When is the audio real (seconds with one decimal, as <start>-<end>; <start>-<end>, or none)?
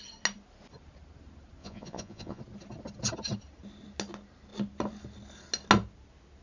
0.0-1.6; 2.4-6.4